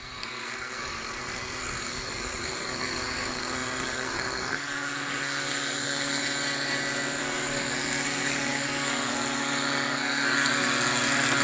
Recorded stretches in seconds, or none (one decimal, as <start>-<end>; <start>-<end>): 6.2-7.2